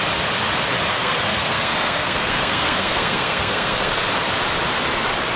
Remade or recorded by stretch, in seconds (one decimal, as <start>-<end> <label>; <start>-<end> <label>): 0.0-0.9 recorded; 0.9-4.1 remade; 4.1-5.4 recorded